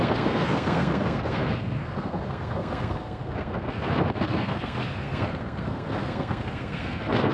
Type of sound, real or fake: fake